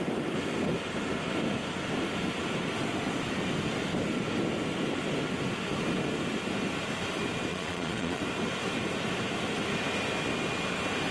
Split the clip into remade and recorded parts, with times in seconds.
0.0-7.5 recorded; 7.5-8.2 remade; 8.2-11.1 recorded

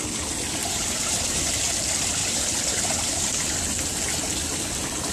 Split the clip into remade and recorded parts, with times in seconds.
0.0-0.6 recorded; 0.6-1.6 remade; 1.6-2.2 recorded; 2.2-3.6 remade; 3.6-5.1 recorded

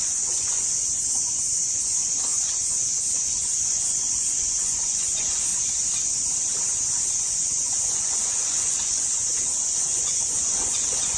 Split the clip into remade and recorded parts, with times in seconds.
0.0-5.5 remade; 5.5-7.1 recorded; 7.1-11.2 remade

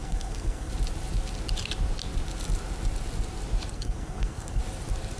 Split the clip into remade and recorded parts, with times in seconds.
0.0-0.7 remade; 0.7-3.7 recorded; 3.7-4.6 remade; 4.6-5.2 recorded

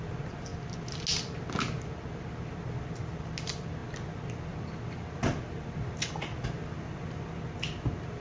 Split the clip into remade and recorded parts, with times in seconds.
0.0-8.2 recorded

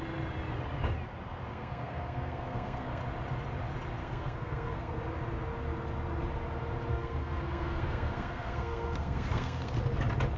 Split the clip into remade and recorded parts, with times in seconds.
0.0-1.5 recorded; 1.5-3.0 remade; 3.0-4.0 recorded; 4.0-5.0 remade; 5.0-6.9 recorded; 6.9-9.7 remade; 9.7-10.4 recorded

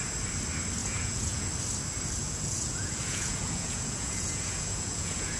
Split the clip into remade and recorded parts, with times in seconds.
0.0-0.8 recorded; 0.8-1.5 remade; 1.5-2.2 recorded; 2.2-5.4 remade